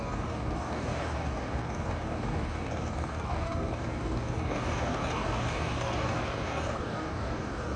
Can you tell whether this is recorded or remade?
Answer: remade